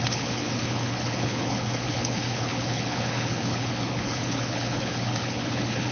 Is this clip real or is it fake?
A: fake